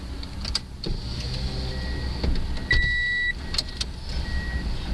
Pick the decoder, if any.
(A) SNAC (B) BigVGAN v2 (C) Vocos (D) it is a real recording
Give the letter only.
D